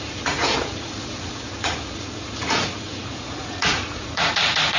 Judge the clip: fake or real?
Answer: fake